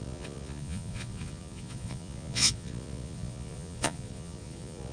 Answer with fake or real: fake